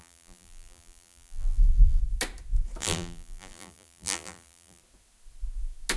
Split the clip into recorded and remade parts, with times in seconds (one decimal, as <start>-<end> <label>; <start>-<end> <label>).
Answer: 0.0-2.0 remade; 2.0-2.8 recorded; 2.8-4.8 remade; 4.8-6.0 recorded